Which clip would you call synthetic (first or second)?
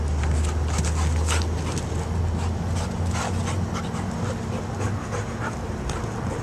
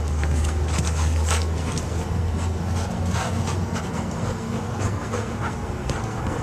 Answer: second